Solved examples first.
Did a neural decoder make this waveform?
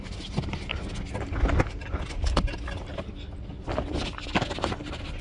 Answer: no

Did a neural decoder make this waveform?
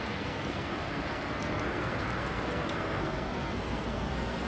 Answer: yes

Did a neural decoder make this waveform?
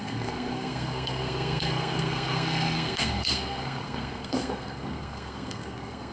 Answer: yes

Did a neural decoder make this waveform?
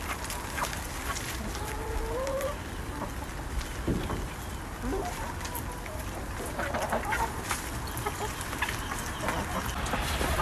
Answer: no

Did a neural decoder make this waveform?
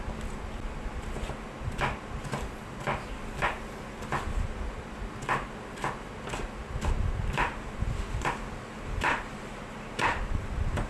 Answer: no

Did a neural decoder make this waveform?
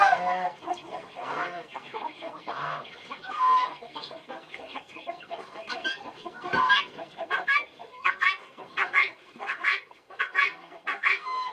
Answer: yes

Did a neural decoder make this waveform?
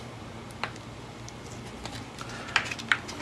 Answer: no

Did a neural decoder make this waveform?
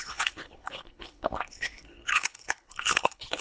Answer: yes